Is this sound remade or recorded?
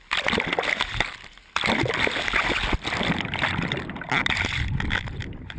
recorded